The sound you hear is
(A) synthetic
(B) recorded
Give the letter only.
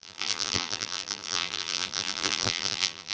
A